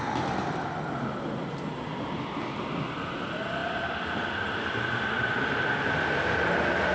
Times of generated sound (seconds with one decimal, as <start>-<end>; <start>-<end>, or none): none